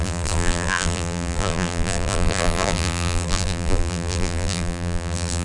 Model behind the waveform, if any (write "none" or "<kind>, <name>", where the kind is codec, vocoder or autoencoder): vocoder, BigVGAN v2